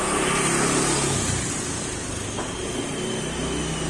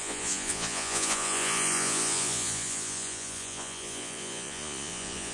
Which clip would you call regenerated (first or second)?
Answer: second